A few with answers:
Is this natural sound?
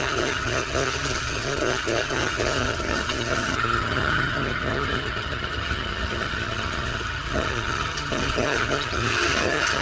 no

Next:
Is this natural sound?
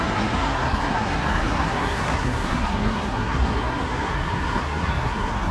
no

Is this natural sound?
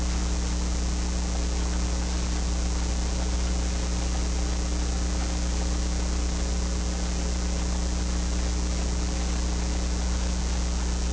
yes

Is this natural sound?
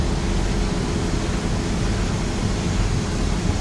yes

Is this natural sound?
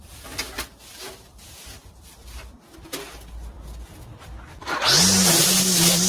yes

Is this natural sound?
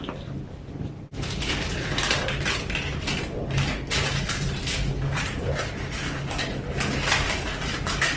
yes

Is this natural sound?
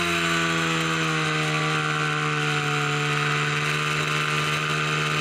yes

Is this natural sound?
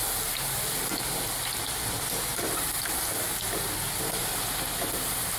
yes